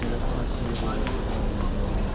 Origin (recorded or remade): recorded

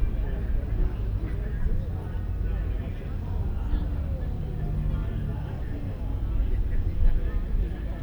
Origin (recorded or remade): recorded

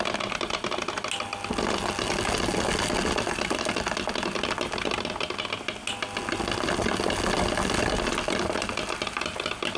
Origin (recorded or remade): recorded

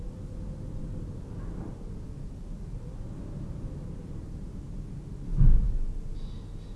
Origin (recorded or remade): recorded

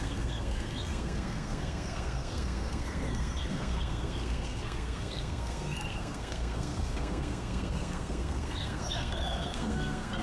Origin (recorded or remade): remade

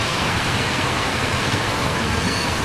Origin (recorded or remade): remade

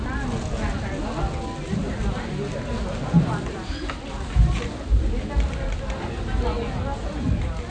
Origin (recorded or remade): recorded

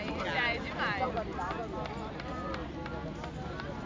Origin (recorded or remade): recorded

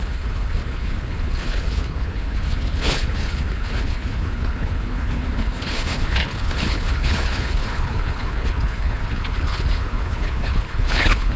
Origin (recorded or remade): remade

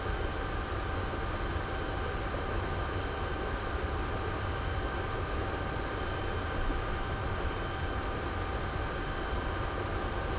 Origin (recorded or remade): recorded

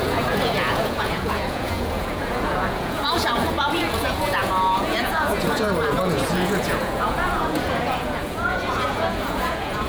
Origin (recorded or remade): remade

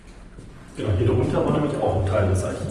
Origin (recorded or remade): remade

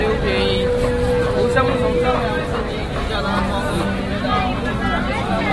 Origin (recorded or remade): recorded